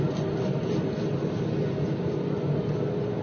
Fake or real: real